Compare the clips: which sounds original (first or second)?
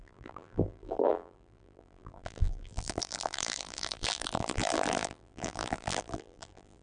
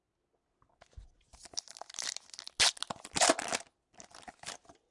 second